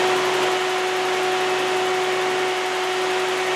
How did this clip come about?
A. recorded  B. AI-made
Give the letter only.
A